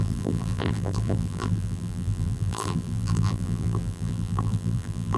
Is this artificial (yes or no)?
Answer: yes